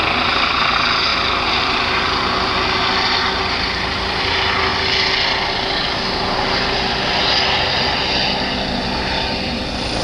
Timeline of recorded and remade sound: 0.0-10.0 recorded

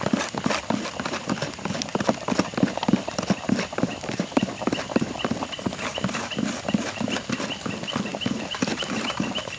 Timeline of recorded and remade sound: 0.0-9.6 recorded

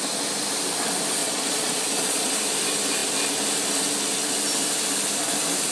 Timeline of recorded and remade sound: 0.0-1.2 recorded; 1.2-2.3 remade; 2.3-5.7 recorded